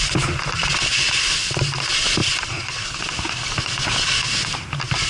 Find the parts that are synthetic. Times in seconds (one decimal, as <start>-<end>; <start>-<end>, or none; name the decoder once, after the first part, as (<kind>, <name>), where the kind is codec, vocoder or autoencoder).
2.2-3.7 (vocoder, BigVGAN v2)